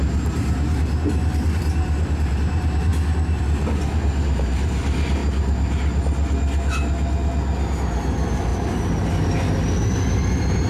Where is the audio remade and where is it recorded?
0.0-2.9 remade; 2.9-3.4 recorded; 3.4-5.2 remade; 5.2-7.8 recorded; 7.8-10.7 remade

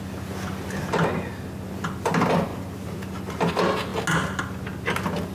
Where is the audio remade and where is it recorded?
0.0-5.3 recorded

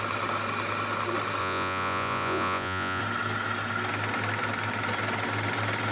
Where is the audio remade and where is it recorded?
0.0-1.4 recorded; 1.4-3.0 remade; 3.0-5.9 recorded

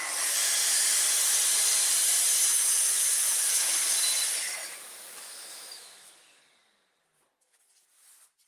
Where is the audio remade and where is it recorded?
0.0-2.5 recorded; 2.5-3.7 remade; 3.7-4.6 recorded; 4.6-6.4 remade; 6.4-8.5 recorded

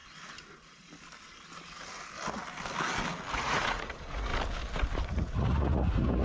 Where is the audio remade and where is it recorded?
0.0-3.3 recorded; 3.3-4.3 remade; 4.3-5.0 recorded; 5.0-6.2 remade

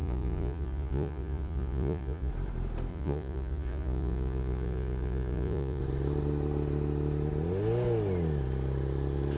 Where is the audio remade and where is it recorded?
0.0-2.3 remade; 2.3-2.9 recorded; 2.9-5.8 remade; 5.8-9.4 recorded

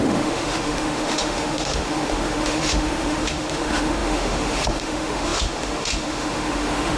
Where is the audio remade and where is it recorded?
0.0-7.0 remade